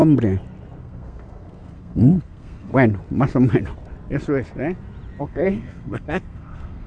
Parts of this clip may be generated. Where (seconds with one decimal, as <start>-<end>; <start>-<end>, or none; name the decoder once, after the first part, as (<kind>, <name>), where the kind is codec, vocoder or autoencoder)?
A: 0.8-2.7 (codec, SNAC); 5.2-6.9